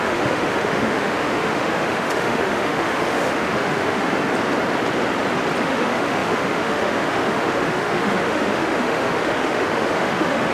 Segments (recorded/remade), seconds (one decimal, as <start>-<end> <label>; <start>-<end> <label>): 0.0-4.3 remade; 4.3-5.6 recorded; 5.6-10.5 remade